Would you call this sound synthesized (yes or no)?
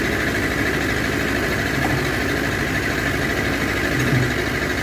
no